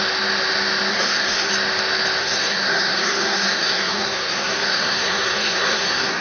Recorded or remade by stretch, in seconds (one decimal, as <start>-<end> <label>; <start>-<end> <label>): 0.0-0.9 recorded; 0.9-1.5 remade; 1.5-2.2 recorded; 2.2-6.2 remade